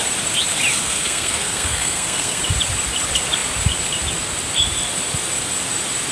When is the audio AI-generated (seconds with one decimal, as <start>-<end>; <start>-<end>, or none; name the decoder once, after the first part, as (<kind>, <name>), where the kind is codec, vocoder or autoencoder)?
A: 0.8-2.4 (codec, SNAC)